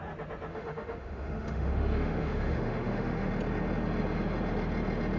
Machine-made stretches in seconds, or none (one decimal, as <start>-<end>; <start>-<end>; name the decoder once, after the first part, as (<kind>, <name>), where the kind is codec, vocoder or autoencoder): 0.5-3.3 (autoencoder, DAC-VAE)